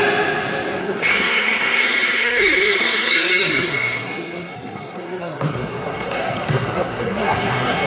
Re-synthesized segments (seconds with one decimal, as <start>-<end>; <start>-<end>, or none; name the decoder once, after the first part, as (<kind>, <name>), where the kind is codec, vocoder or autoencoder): 0.8-7.9 (codec, SNAC)